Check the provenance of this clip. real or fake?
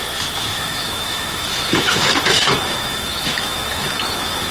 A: fake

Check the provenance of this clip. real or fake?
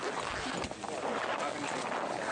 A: real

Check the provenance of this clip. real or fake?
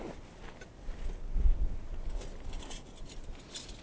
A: real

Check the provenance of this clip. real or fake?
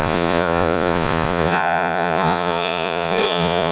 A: fake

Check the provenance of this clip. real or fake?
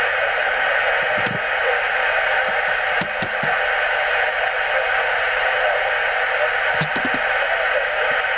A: real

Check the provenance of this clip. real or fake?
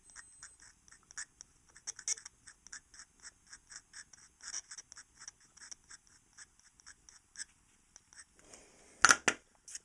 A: real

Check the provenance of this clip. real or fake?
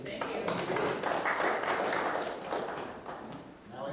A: real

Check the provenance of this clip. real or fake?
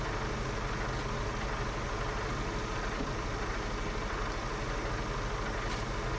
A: real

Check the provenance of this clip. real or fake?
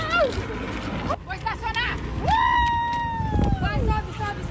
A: real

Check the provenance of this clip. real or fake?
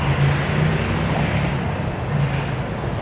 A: real